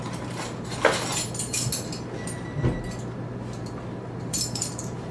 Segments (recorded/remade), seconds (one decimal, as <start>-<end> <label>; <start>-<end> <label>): 0.0-1.1 remade; 1.1-4.2 recorded; 4.2-5.1 remade